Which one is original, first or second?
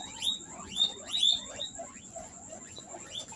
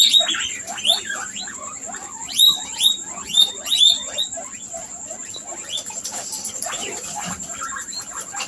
second